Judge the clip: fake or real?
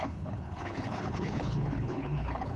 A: fake